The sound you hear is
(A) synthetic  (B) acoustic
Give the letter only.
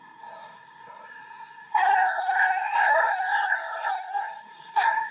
A